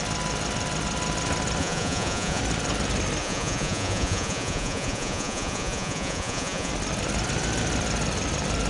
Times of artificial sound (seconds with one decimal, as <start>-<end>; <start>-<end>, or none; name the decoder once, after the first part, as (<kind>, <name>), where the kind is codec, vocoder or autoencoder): 1.6-2.4 (vocoder, Vocos); 3.2-6.7